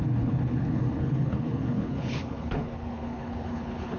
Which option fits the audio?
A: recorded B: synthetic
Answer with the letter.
B